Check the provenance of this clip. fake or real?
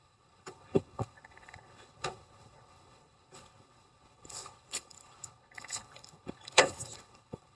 fake